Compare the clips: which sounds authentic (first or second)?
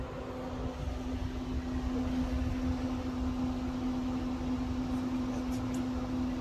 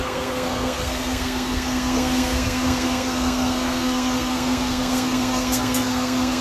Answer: first